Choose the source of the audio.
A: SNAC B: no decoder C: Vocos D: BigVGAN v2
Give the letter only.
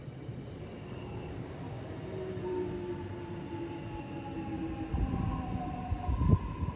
B